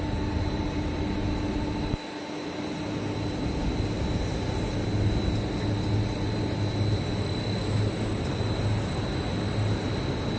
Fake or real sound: real